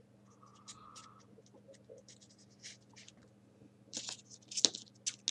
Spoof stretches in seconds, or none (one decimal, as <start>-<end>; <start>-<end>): none

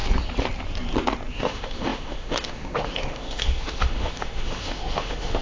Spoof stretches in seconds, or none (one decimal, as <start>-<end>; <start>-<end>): 1.3-5.4

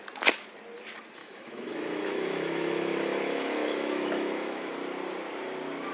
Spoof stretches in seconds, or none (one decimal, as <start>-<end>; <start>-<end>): 1.2-4.7

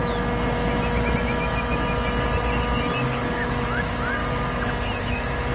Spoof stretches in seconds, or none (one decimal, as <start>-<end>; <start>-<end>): 3.3-4.2; 5.0-5.5

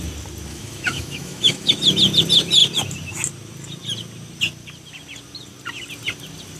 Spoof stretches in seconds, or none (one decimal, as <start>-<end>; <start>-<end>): 0.5-1.7

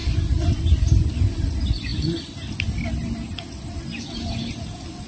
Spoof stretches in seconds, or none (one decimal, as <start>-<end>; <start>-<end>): none